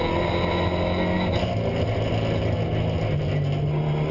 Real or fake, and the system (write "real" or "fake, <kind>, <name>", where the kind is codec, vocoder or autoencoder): real